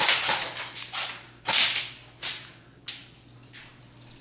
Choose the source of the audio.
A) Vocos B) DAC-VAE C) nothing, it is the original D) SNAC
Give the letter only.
C